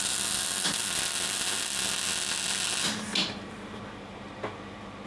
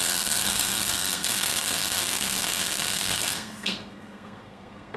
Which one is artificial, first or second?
second